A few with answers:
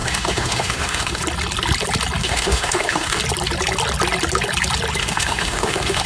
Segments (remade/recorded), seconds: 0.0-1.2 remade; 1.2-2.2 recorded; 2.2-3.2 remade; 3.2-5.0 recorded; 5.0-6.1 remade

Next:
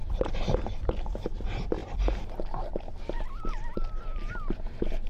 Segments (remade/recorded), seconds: 0.0-5.1 recorded

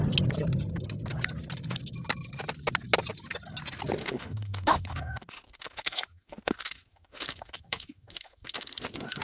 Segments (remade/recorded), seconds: 0.0-4.0 recorded; 4.0-9.2 remade

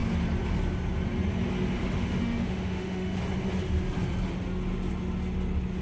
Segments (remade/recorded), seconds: 0.0-1.8 recorded; 1.8-3.2 remade; 3.2-5.8 recorded

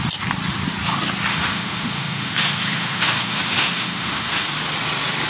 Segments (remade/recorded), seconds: 0.0-1.3 recorded; 1.3-4.5 remade; 4.5-5.3 recorded

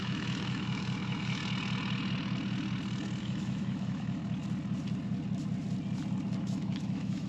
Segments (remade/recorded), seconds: 0.0-1.4 remade; 1.4-3.2 recorded; 3.2-4.2 remade; 4.2-6.4 recorded; 6.4-7.3 remade

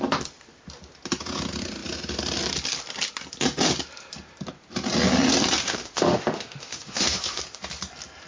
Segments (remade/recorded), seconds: 0.0-5.6 recorded; 5.6-7.4 remade; 7.4-8.3 recorded